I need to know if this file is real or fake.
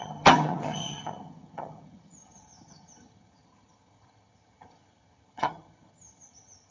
fake